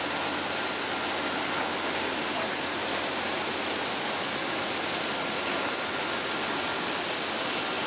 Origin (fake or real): real